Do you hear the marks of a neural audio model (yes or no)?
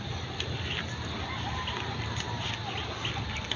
no